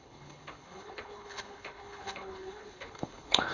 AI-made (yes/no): yes